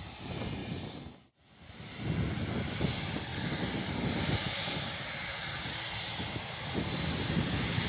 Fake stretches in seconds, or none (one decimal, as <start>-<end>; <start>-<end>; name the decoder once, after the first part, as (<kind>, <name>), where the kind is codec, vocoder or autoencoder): none